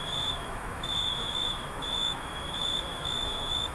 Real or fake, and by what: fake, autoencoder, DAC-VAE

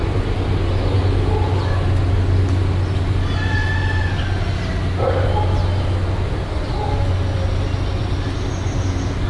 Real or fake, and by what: real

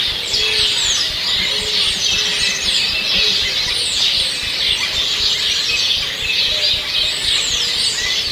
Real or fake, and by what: real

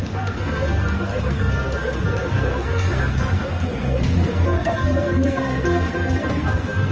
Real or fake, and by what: fake, codec, SNAC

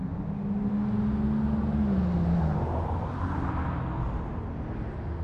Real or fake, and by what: real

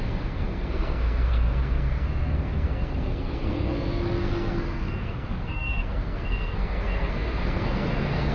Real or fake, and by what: fake, codec, SNAC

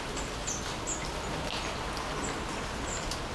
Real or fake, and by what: real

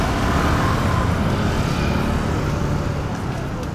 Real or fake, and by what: real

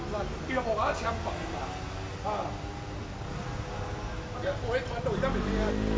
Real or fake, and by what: real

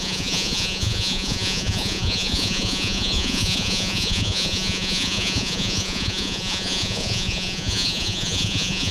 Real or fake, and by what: fake, vocoder, Vocos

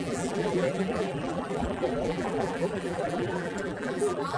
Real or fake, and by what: fake, vocoder, BigVGAN v2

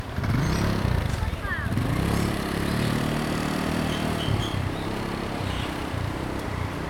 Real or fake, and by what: fake, vocoder, BigVGAN v2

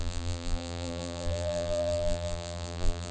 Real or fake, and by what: fake, vocoder, BigVGAN v2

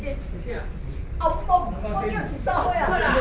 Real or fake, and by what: real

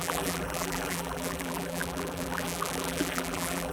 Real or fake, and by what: fake, vocoder, BigVGAN v2